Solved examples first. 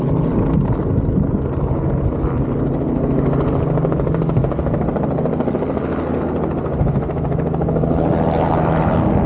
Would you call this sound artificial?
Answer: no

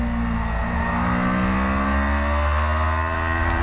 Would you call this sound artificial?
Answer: no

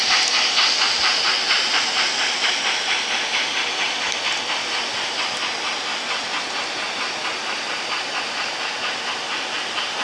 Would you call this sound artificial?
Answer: no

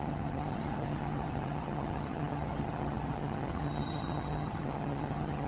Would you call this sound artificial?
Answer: yes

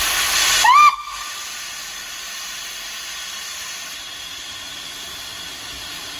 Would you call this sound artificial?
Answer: no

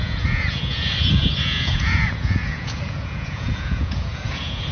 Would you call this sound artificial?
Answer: yes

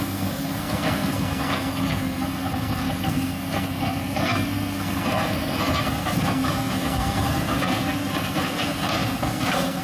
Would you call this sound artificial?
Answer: yes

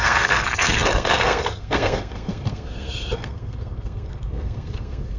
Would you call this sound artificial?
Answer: yes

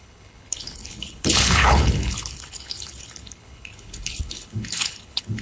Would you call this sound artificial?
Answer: yes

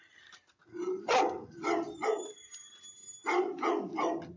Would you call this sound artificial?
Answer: no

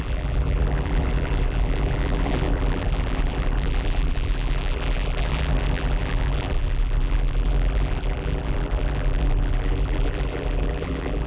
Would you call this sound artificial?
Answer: yes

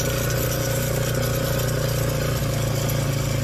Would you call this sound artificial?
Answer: no